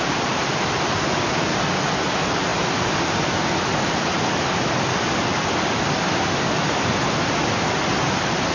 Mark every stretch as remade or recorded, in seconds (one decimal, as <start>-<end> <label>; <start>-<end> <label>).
0.0-8.5 recorded